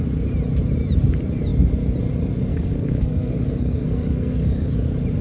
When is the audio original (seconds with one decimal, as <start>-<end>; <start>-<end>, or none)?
0.0-2.5; 4.7-5.2